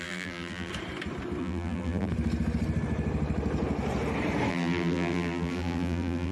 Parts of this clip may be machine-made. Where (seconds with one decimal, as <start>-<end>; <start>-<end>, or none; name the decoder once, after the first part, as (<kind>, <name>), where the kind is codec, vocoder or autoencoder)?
0.0-0.7 (vocoder, BigVGAN v2); 1.4-2.1; 4.5-6.3